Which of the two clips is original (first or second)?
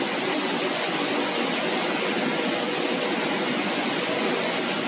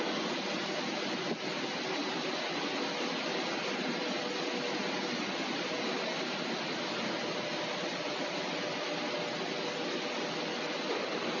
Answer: second